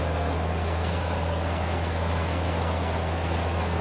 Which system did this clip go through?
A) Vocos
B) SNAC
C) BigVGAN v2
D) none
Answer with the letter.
B